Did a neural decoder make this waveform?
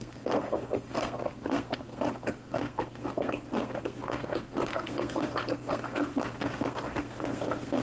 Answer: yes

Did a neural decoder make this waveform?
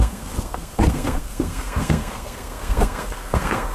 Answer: yes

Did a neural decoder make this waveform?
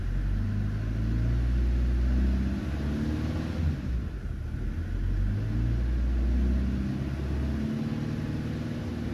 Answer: no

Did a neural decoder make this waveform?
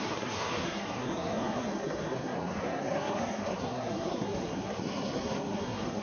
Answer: yes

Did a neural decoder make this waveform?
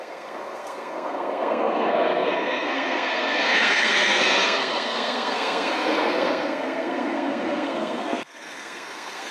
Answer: yes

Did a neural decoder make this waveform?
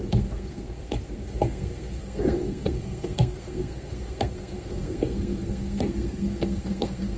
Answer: yes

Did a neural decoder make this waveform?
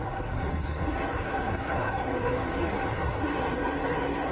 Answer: yes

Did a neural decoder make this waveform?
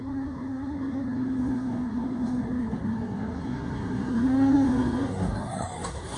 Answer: yes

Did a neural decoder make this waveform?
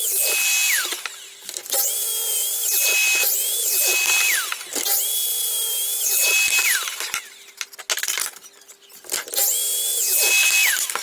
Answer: no